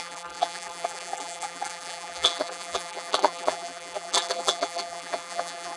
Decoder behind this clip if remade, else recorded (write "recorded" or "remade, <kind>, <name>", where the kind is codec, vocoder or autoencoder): remade, vocoder, BigVGAN v2